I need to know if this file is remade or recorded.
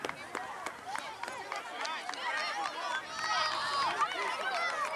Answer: recorded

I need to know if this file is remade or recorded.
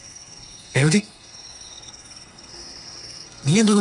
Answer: remade